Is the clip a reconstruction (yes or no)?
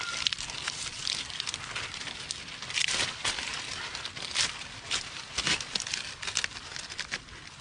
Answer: no